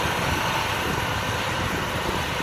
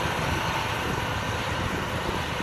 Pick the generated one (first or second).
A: first